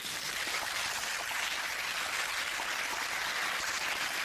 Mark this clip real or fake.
real